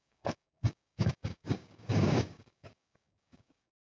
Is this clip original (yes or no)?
no